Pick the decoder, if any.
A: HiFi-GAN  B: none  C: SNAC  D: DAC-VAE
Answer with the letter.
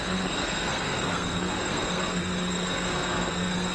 C